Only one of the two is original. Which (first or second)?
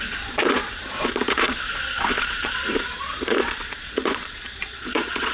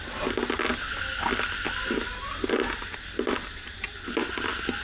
second